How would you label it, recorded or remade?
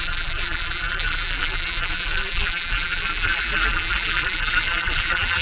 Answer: remade